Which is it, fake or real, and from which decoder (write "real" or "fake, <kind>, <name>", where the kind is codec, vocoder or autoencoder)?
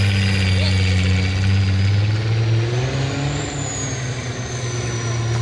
real